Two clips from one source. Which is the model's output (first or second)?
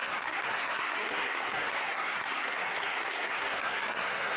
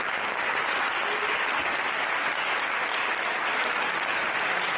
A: first